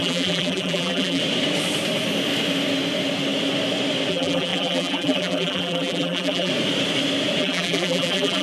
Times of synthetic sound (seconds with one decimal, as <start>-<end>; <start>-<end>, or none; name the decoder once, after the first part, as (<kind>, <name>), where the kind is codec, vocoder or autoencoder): 0.0-1.2 (vocoder, BigVGAN v2); 4.1-6.5; 7.4-8.4